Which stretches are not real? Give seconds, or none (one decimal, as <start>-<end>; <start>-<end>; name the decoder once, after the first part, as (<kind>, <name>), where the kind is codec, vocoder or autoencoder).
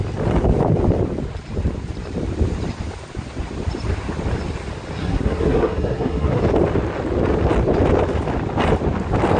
5.0-6.4 (codec, SNAC)